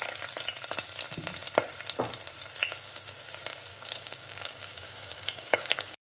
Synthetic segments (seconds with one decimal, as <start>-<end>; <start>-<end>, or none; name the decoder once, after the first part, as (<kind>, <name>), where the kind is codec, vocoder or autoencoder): 2.6-3.3 (codec, DAC); 3.7-6.1